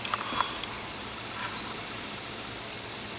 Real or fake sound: real